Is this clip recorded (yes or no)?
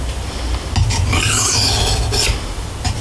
yes